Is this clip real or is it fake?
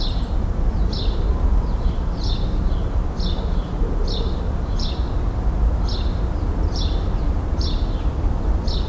real